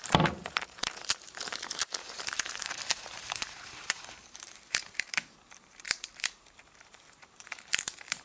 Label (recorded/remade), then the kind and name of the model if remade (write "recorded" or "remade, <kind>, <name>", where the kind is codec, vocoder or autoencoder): remade, vocoder, BigVGAN v2